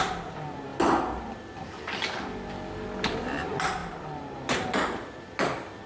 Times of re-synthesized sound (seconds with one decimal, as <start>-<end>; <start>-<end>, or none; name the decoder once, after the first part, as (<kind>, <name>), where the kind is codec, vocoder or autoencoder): none